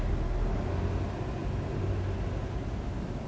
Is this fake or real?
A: real